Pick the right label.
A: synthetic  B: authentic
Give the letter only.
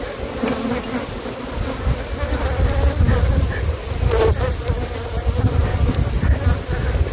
B